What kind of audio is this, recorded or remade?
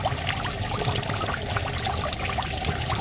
recorded